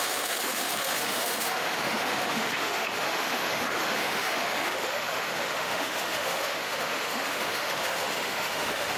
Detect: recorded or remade remade